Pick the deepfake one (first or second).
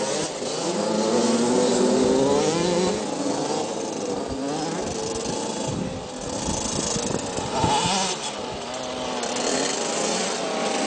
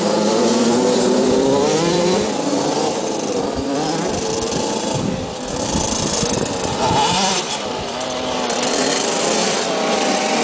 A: second